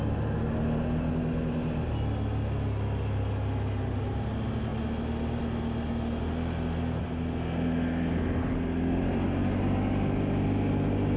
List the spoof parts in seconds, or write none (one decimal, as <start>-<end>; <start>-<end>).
none